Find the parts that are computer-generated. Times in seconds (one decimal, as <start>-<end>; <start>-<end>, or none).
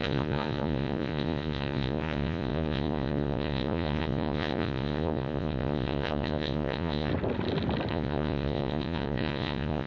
0.0-7.1; 7.9-9.9